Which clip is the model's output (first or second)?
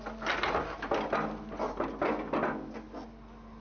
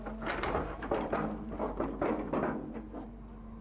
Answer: second